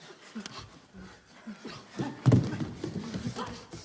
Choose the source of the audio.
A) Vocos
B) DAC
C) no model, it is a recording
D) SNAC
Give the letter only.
C